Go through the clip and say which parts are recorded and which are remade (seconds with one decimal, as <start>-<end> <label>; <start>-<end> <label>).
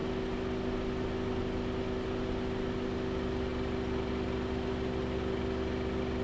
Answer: 0.0-6.2 recorded